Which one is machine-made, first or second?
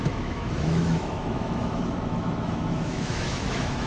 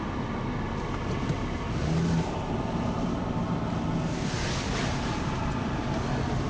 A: first